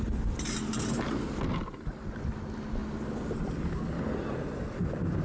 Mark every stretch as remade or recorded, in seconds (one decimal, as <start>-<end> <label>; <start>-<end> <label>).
0.0-5.2 recorded

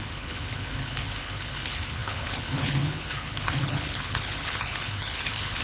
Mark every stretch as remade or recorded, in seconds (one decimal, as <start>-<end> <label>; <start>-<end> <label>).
0.0-5.6 remade